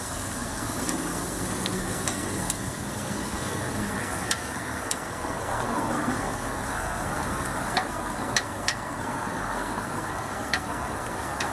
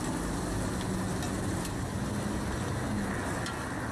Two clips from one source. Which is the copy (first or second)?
first